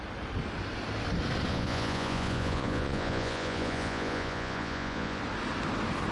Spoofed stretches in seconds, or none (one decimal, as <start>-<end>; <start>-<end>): 1.5-5.2